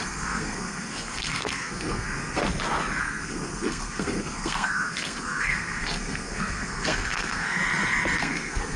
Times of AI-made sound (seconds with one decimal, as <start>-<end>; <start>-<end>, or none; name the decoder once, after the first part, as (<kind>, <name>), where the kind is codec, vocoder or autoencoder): 0.0-2.4 (codec, SNAC); 3.0-7.6; 8.2-8.8